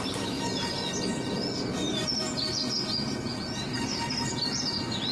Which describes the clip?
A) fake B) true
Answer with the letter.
B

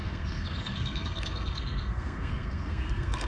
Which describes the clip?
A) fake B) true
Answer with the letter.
A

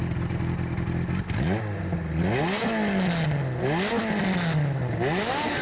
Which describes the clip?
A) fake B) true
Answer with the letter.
B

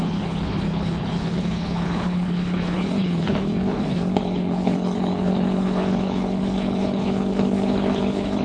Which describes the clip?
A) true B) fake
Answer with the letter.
B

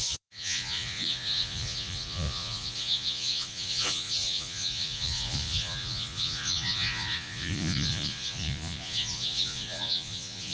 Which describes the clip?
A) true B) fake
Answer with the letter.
B